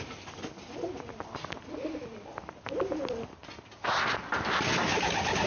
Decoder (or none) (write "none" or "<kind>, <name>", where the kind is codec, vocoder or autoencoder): none